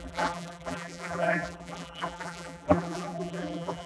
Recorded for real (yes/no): no